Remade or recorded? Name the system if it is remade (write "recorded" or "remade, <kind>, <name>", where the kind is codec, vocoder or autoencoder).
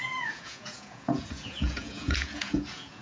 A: remade, vocoder, Vocos